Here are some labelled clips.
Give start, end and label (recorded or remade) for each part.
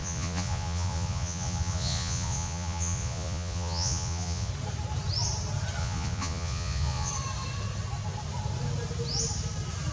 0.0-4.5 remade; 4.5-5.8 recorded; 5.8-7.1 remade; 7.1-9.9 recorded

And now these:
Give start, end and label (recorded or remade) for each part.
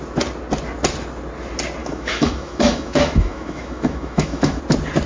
0.0-1.8 recorded; 1.8-4.6 remade; 4.6-5.1 recorded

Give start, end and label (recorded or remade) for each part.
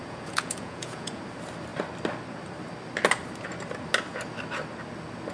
0.0-1.2 remade; 1.2-5.3 recorded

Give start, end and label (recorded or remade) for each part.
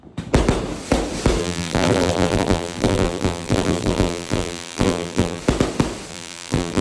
0.0-1.4 recorded; 1.4-5.4 remade; 5.4-6.1 recorded; 6.1-6.8 remade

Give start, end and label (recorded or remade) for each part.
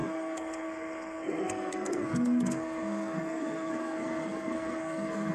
0.0-5.3 remade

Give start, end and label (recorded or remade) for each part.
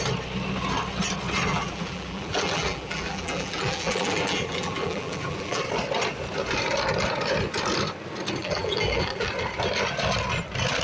0.0-1.5 recorded; 1.5-5.6 remade; 5.6-8.4 recorded; 8.4-9.3 remade; 9.3-10.8 recorded